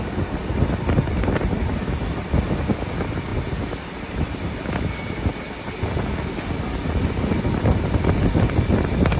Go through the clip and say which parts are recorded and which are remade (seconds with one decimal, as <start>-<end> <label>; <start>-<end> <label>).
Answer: 0.0-9.2 recorded